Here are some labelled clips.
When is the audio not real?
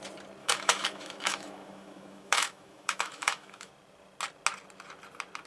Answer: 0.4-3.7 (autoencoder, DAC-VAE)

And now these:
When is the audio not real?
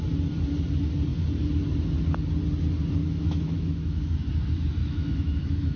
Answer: 3.0-4.3 (autoencoder, DAC-VAE); 4.8-5.8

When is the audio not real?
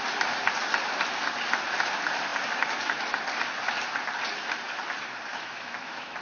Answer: 5.3-6.2 (autoencoder, DAC-VAE)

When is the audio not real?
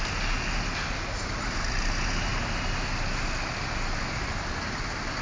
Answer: none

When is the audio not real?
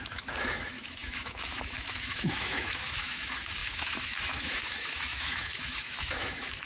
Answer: 0.0-6.7 (autoencoder, DAC-VAE)